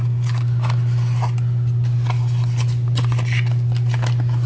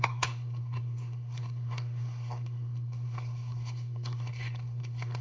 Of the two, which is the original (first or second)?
first